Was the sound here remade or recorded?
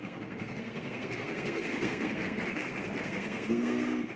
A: remade